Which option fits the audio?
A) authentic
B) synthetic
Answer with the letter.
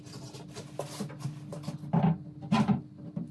A